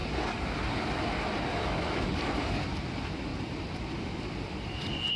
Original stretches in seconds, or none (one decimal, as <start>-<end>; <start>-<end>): 0.0-1.5; 2.1-5.2